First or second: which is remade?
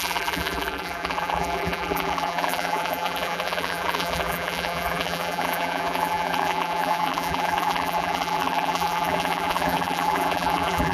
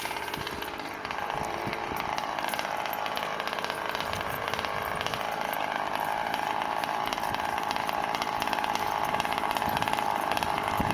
first